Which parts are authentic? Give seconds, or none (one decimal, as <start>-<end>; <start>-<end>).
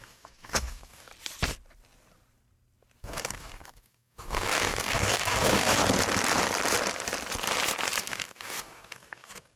1.1-3.0; 5.8-8.0